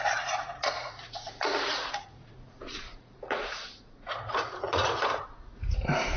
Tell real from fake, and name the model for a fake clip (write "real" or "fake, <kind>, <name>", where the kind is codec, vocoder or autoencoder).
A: fake, vocoder, Vocos